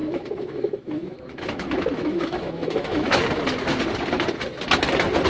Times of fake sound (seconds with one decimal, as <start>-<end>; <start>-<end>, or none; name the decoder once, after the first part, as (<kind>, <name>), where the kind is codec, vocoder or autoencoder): 0.0-3.2 (autoencoder, DAC-VAE)